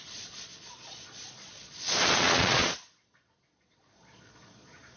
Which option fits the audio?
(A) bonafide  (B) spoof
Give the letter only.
B